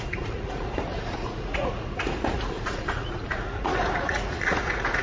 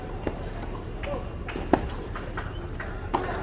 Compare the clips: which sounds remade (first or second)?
first